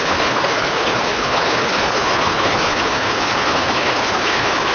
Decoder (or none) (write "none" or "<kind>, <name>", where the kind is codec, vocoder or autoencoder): codec, HILCodec